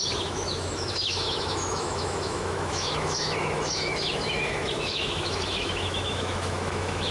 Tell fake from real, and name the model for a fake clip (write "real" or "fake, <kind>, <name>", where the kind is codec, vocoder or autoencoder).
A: fake, autoencoder, DAC-VAE